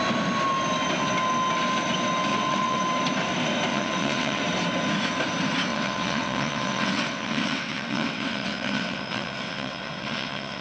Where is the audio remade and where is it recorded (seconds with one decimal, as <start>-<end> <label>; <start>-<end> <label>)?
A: 0.0-2.3 recorded; 2.3-2.8 remade; 2.8-3.7 recorded; 3.7-4.4 remade; 4.4-5.7 recorded; 5.7-10.6 remade